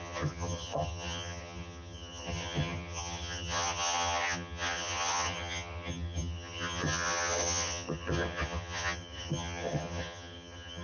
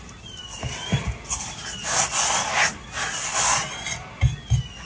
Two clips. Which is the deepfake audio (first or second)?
first